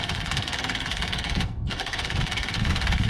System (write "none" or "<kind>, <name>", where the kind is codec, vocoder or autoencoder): codec, SNAC